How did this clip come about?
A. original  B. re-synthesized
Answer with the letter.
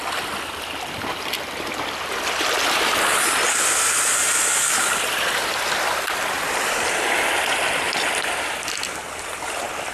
B